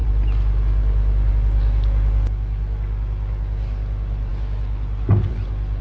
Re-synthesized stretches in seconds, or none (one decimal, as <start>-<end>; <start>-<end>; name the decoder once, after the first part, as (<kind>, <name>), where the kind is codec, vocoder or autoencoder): none

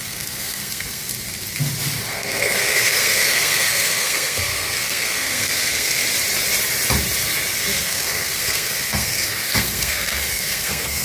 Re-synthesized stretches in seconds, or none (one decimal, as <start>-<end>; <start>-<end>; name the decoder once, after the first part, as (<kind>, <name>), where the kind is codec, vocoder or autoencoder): 0.0-1.1 (codec, SNAC); 2.0-6.0; 7.6-11.0

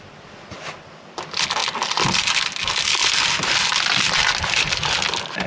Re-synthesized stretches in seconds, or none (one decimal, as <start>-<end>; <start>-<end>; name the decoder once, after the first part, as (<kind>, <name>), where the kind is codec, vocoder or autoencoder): none

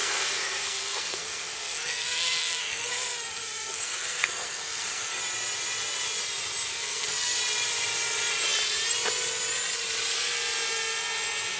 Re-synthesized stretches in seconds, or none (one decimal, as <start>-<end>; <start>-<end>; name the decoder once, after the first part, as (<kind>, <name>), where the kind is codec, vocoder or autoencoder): 0.0-5.2 (codec, SNAC); 6.7-7.4